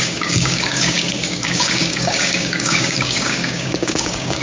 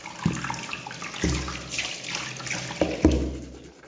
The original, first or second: second